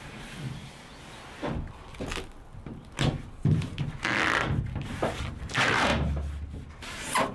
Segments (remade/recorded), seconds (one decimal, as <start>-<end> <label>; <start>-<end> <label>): 0.0-0.9 remade; 0.9-5.3 recorded; 5.3-5.9 remade; 5.9-6.7 recorded; 6.7-7.3 remade